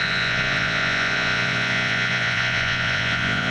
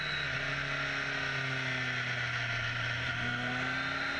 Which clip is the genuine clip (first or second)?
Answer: second